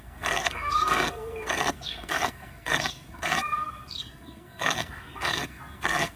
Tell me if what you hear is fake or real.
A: fake